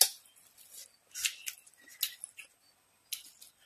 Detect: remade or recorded recorded